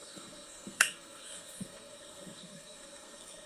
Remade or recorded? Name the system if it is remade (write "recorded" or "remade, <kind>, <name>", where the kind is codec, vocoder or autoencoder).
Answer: remade, codec, SNAC